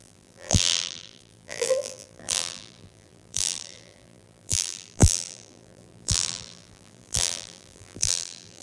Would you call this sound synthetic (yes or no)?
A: yes